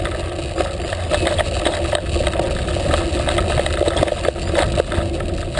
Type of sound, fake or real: real